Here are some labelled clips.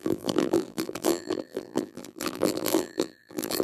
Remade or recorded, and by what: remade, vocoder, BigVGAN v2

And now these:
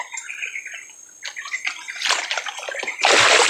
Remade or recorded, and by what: recorded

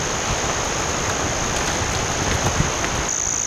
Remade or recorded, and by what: remade, vocoder, BigVGAN v2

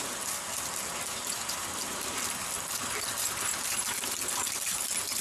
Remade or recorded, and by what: remade, vocoder, BigVGAN v2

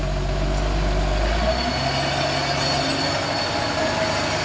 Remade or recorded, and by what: recorded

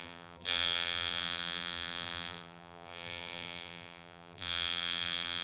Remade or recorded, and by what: remade, vocoder, BigVGAN v2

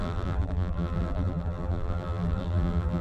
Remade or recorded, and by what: remade, vocoder, BigVGAN v2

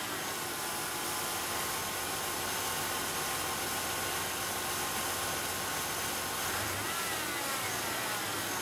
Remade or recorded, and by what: recorded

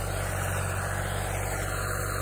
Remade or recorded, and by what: recorded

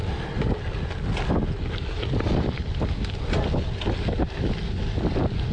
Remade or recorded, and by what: recorded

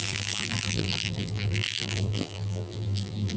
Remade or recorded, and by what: remade, vocoder, BigVGAN v2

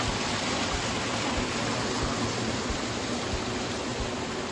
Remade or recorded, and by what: recorded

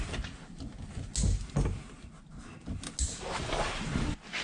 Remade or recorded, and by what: recorded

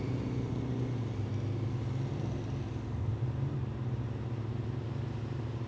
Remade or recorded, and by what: recorded